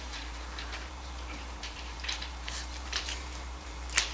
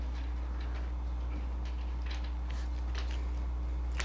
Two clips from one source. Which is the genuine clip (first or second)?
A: second